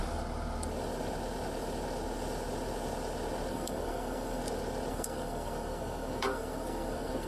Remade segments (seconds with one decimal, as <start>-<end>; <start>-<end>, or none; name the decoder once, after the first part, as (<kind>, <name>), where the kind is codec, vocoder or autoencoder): 3.5-4.4 (codec, SNAC); 4.9-7.3